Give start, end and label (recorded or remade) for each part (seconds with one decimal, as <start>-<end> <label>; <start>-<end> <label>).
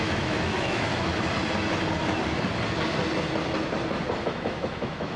0.0-1.1 remade; 1.1-4.2 recorded; 4.2-5.2 remade